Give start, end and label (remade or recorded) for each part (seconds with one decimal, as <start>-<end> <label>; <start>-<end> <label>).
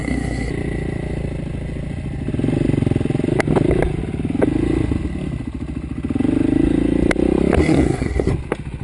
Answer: 0.0-0.5 remade; 0.5-7.6 recorded; 7.6-8.3 remade; 8.3-8.8 recorded